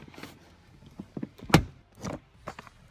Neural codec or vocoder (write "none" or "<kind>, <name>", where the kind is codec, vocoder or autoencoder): none